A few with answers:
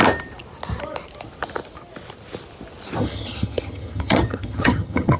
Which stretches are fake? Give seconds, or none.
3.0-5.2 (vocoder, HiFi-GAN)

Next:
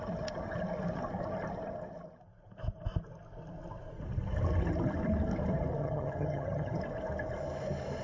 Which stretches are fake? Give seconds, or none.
5.8-6.8 (vocoder, HiFi-GAN)

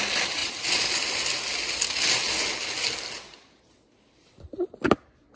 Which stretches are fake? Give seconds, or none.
none

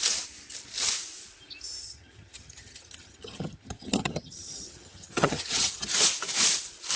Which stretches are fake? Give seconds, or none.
1.8-5.9 (vocoder, HiFi-GAN)

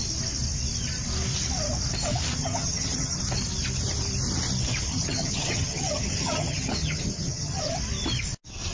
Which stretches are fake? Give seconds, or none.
2.4-3.2 (vocoder, HiFi-GAN); 4.9-7.8

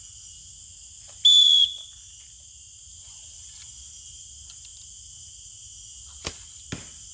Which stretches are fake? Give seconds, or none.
none

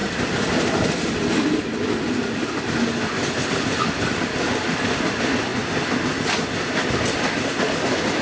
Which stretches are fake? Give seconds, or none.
none

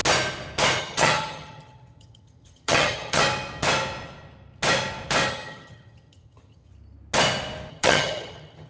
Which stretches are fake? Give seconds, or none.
0.8-3.2 (vocoder, HiFi-GAN); 5.3-6.7; 7.7-8.7